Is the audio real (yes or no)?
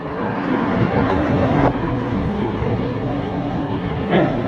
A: no